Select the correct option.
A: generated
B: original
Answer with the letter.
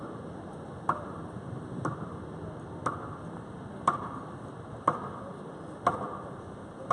B